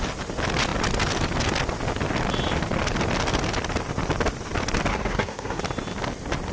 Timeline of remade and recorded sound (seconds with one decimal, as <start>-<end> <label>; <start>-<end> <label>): 0.0-4.9 recorded; 4.9-5.6 remade; 5.6-6.5 recorded